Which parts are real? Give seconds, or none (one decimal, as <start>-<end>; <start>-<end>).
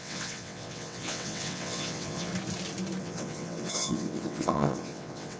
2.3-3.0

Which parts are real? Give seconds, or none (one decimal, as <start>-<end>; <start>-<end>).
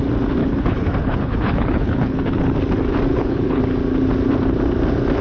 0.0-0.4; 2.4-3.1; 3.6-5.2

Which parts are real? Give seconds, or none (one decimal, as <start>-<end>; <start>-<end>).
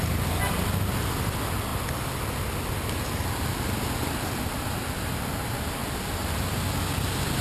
0.0-7.4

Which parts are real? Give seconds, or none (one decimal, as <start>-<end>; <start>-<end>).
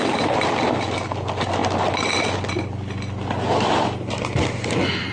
0.0-5.1